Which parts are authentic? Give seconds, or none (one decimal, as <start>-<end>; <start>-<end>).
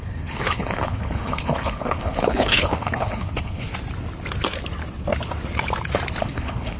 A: 3.7-6.2